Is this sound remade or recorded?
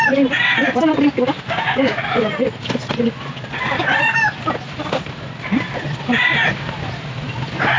recorded